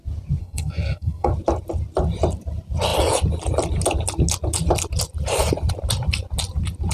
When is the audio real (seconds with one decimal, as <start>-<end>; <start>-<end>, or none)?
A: 0.0-0.4; 1.3-6.9